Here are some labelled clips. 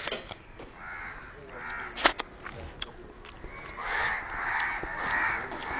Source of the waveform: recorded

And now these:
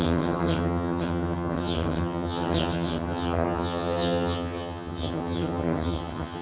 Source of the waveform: remade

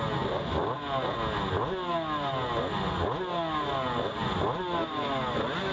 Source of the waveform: recorded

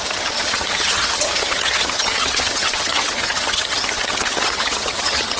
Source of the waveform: remade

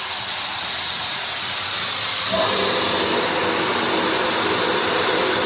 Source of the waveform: recorded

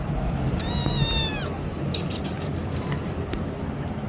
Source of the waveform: recorded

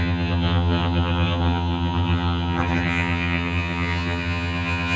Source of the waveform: remade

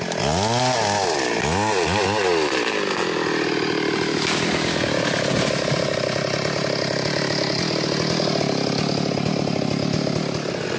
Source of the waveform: recorded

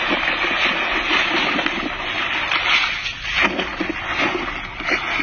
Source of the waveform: recorded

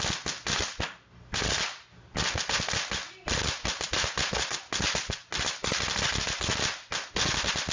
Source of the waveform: recorded